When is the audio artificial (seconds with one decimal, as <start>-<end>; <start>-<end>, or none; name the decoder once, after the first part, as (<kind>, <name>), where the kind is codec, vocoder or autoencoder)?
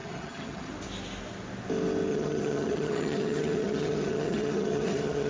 0.0-0.7 (vocoder, HiFi-GAN); 2.1-5.3